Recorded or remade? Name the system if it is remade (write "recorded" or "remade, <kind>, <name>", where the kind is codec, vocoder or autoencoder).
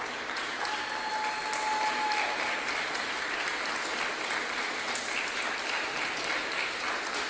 recorded